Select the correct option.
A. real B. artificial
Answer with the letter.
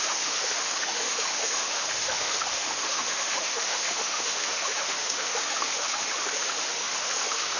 B